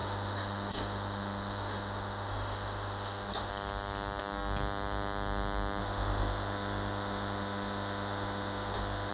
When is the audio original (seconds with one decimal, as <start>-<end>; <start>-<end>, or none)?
3.5-5.8